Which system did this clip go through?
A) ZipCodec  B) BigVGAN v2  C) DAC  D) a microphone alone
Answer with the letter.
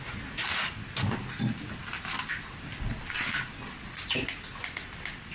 D